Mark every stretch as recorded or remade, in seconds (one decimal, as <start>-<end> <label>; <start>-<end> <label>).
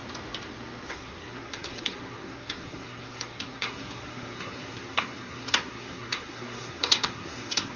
0.0-0.9 recorded; 0.9-7.8 remade